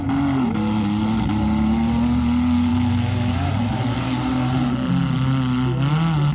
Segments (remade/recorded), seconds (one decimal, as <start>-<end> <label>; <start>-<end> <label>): 0.0-6.3 recorded